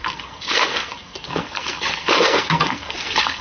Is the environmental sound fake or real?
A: fake